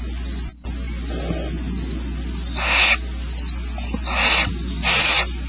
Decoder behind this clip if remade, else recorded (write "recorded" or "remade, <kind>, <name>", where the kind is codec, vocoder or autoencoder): recorded